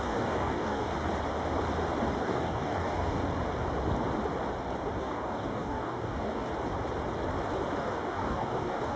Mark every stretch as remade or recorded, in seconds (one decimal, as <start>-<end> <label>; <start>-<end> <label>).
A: 0.0-0.9 remade; 0.9-2.2 recorded; 2.2-3.2 remade; 3.2-5.0 recorded; 5.0-6.5 remade; 6.5-7.8 recorded; 7.8-9.0 remade